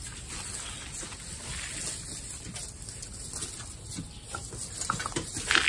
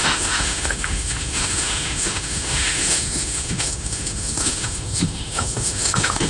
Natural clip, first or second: first